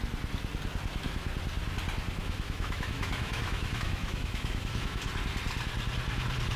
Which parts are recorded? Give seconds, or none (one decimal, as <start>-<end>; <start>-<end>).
0.0-2.2; 5.1-6.6